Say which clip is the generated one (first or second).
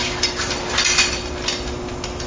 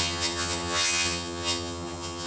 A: second